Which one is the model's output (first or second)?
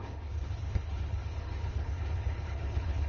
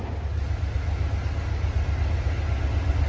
first